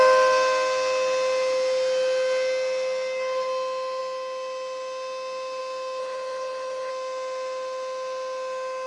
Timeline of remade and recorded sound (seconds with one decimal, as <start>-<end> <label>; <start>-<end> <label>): 0.0-6.0 recorded; 6.0-6.9 remade; 6.9-8.9 recorded